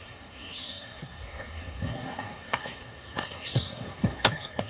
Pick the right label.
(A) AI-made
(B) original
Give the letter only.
A